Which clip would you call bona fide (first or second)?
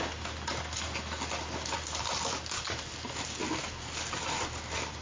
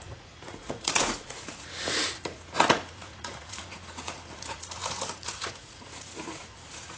first